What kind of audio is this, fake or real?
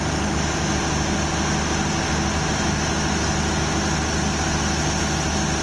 real